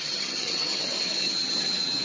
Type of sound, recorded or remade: remade